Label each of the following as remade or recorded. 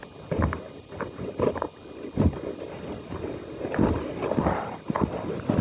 recorded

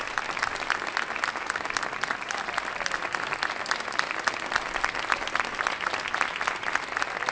recorded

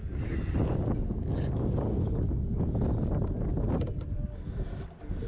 recorded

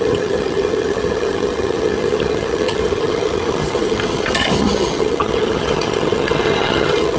remade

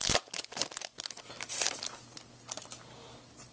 recorded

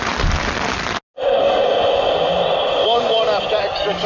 recorded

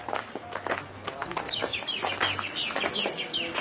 recorded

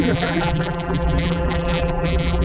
remade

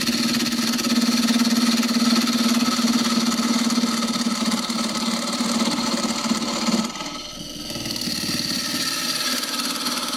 recorded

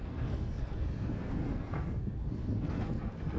remade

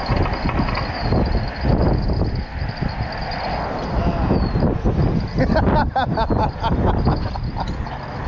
recorded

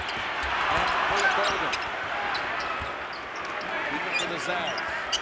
recorded